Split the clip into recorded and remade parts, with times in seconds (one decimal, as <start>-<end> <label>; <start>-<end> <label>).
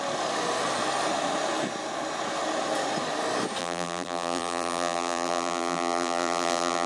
0.0-3.6 recorded; 3.6-6.9 remade